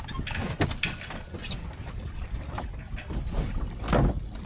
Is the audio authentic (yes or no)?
yes